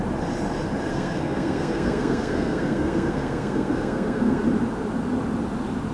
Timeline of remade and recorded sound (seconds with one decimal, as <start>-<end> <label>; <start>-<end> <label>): 0.0-0.9 recorded; 0.9-4.4 remade; 4.4-5.9 recorded